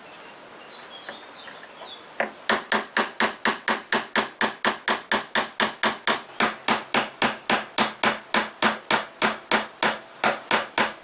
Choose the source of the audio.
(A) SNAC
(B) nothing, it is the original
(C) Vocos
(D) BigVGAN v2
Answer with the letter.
B